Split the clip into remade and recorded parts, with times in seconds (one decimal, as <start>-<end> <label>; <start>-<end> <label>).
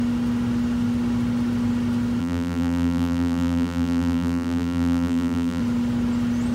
0.0-2.2 recorded; 2.2-5.6 remade; 5.6-6.5 recorded